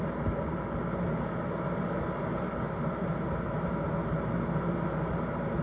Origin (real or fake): real